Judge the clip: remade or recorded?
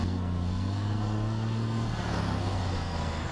remade